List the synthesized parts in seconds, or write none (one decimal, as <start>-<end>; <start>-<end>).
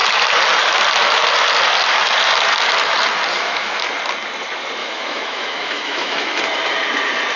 3.3-3.8; 4.8-6.4